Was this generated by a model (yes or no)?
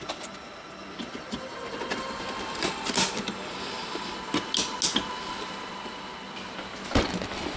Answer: no